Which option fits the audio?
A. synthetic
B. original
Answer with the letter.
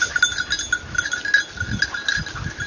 B